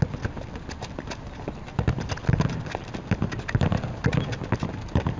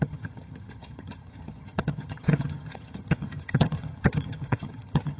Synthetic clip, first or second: second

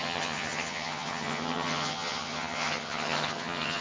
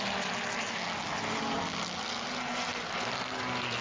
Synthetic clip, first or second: first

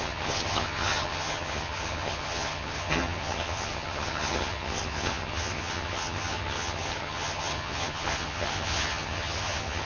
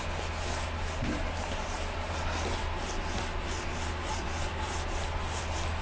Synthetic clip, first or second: first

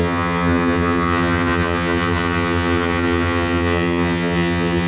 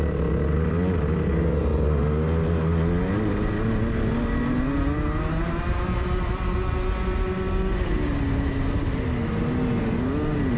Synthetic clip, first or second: first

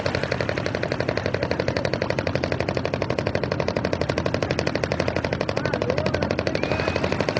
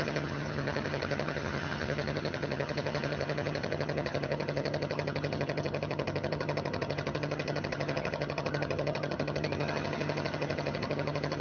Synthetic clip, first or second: second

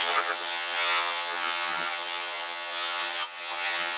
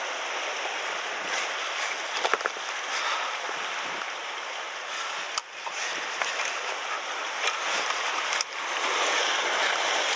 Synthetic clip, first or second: first